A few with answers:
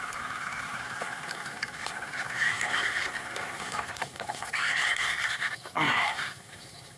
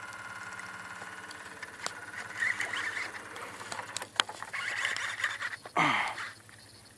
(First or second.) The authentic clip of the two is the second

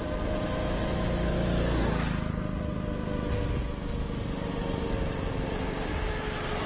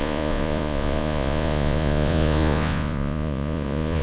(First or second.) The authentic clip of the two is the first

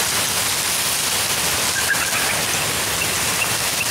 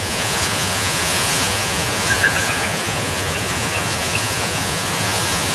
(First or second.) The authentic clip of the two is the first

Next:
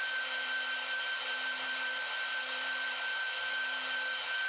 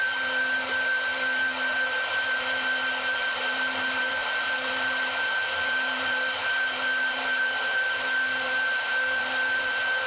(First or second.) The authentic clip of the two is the first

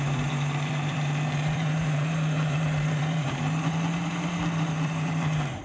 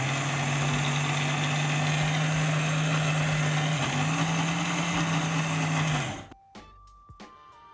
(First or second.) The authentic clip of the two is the second